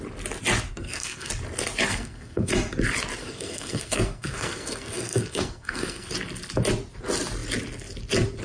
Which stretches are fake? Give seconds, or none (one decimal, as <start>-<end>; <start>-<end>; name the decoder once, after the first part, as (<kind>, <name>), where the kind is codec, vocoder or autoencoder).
0.7-1.3 (codec, SNAC); 1.9-2.5; 3.2-6.1